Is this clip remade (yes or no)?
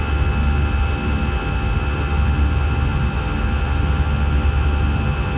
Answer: no